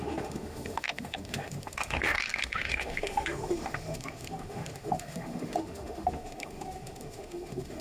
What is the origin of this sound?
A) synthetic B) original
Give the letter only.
A